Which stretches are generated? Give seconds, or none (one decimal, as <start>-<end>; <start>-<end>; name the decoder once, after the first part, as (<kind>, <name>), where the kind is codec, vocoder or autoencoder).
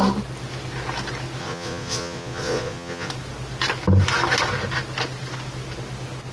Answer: 1.4-3.1 (vocoder, Vocos)